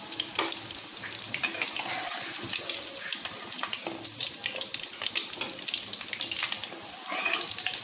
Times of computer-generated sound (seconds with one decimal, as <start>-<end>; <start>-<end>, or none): none